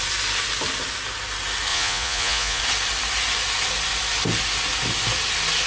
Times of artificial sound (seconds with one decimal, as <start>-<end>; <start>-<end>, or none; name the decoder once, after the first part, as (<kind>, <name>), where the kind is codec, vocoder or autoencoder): 1.7-2.6 (vocoder, Vocos)

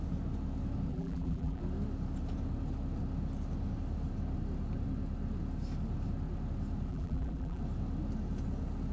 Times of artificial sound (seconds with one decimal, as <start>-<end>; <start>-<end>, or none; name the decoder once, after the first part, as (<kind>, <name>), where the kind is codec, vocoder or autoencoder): 0.9-1.6 (vocoder, BigVGAN v2); 6.9-7.6

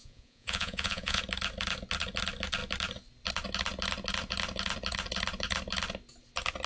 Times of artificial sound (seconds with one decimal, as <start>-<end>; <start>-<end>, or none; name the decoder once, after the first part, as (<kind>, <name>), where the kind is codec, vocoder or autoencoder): 0.0-1.2 (vocoder, Vocos)

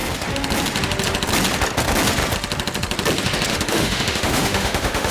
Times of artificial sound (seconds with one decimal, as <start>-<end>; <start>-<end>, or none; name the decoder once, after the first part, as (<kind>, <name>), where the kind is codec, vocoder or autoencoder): 3.5-5.1 (autoencoder, DAC-VAE)

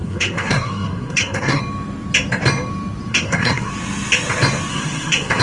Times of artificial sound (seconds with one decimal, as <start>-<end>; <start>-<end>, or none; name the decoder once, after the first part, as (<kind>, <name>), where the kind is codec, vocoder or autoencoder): 0.0-1.6 (codec, SNAC); 3.1-3.7; 4.7-5.4